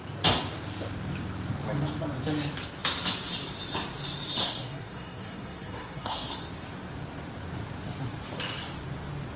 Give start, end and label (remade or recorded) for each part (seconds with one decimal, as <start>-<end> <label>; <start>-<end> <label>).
0.0-4.4 recorded; 4.4-6.3 remade; 6.3-9.4 recorded